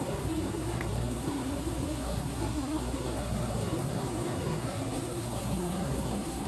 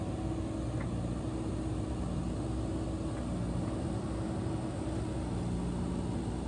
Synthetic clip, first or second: first